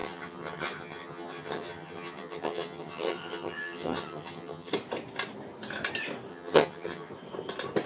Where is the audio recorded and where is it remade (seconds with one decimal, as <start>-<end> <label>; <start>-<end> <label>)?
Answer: 0.0-4.7 remade; 4.7-6.3 recorded; 6.3-7.1 remade; 7.1-7.9 recorded